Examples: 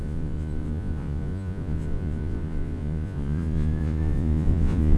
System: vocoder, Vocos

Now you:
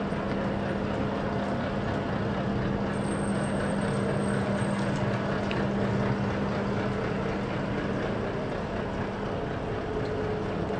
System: none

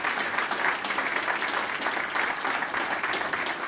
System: none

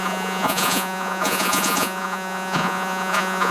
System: vocoder, Vocos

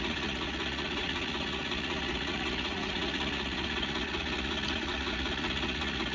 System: vocoder, Vocos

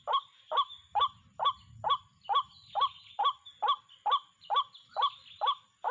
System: none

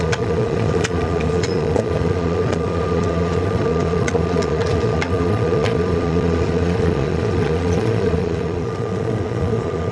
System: vocoder, Vocos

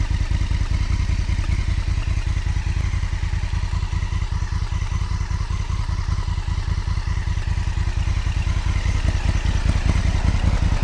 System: none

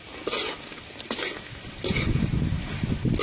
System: none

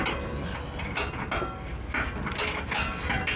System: none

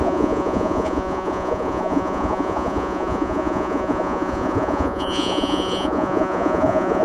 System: vocoder, Vocos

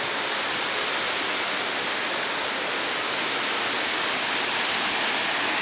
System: none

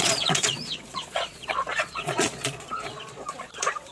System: vocoder, Vocos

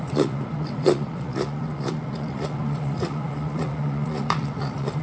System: vocoder, Vocos